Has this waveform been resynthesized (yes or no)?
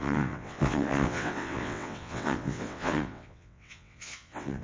yes